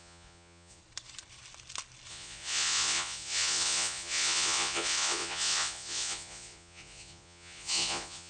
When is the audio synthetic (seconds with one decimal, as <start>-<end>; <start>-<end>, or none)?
0.0-0.8; 2.1-8.3